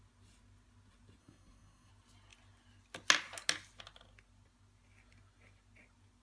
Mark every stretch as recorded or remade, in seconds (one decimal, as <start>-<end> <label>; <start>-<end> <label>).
0.0-1.2 recorded; 1.2-1.9 remade; 1.9-6.2 recorded